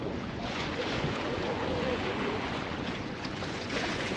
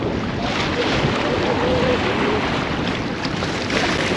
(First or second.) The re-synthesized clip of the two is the first